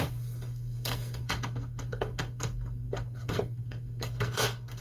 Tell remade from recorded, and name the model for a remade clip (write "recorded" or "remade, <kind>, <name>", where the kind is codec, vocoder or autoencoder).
remade, codec, SNAC